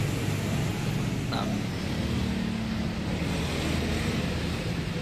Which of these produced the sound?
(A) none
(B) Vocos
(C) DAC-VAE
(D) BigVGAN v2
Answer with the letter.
A